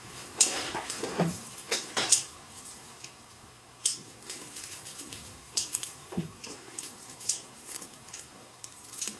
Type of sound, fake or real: fake